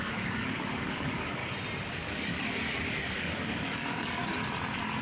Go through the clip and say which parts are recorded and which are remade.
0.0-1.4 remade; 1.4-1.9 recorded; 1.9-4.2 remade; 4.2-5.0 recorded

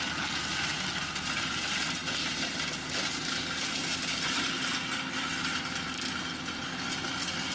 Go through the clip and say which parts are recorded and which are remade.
0.0-7.5 recorded

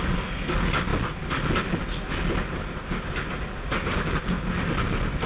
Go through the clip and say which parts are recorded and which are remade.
0.0-5.3 recorded

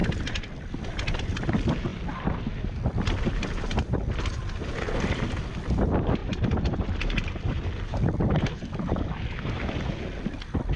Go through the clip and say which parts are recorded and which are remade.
0.0-10.8 recorded

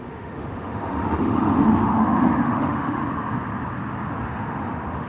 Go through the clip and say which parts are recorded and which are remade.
0.0-3.0 remade; 3.0-4.3 recorded; 4.3-5.1 remade

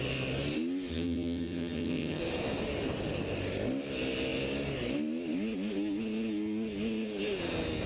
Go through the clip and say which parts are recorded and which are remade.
0.0-0.9 recorded; 0.9-2.2 remade; 2.2-7.9 recorded

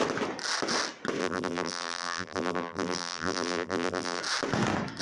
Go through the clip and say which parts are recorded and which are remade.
0.0-1.2 recorded; 1.2-4.2 remade; 4.2-5.0 recorded